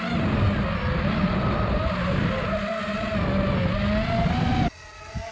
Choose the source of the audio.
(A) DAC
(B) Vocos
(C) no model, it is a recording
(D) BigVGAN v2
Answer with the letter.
C